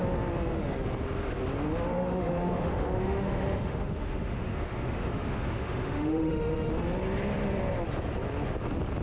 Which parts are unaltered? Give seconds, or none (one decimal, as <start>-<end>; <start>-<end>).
0.0-1.9; 6.7-9.0